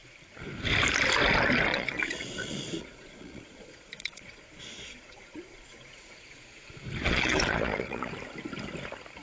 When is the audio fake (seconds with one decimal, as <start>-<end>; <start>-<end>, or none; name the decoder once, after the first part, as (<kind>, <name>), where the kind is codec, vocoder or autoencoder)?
1.7-6.6 (vocoder, Vocos); 7.0-8.1